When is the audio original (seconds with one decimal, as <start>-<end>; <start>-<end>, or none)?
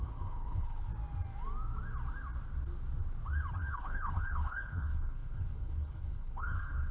0.9-3.5